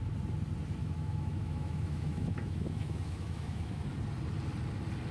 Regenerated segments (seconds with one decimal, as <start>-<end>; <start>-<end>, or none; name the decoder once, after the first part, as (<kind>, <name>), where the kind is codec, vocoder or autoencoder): 0.8-3.9 (autoencoder, DAC-VAE)